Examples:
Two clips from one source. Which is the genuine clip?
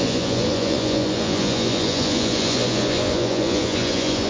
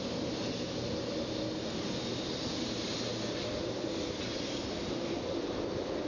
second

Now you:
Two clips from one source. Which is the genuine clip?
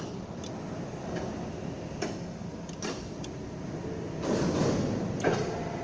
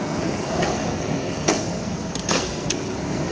first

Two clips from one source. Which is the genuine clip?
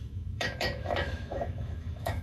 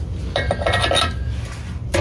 second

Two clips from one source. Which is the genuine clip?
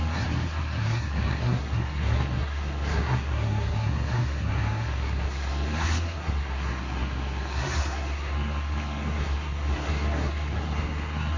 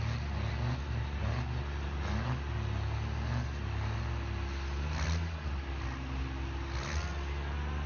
second